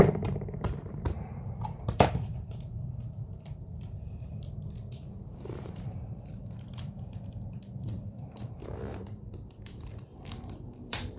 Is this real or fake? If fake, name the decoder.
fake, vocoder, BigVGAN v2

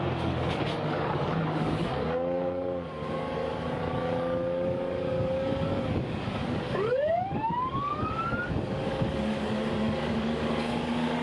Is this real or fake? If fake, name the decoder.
fake, codec, DAC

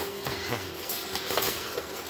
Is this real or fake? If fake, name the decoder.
fake, codec, SNAC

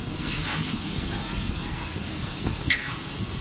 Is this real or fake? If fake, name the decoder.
fake, codec, SNAC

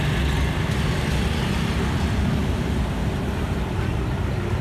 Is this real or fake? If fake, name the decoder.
real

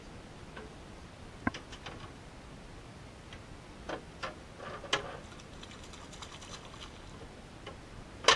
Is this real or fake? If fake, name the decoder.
real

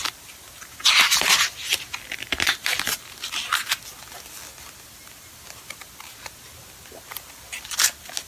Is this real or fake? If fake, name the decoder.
real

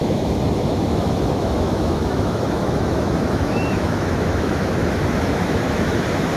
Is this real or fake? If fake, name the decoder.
fake, autoencoder, DAC-VAE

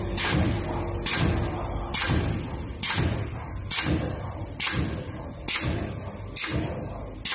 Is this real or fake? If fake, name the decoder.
real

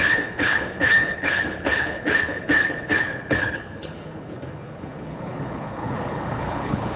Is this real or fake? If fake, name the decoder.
fake, codec, HILCodec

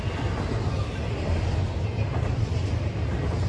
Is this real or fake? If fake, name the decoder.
real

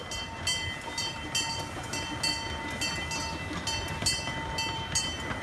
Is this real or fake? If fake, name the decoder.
real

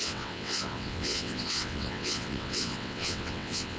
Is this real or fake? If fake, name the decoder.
fake, vocoder, WaveNeXt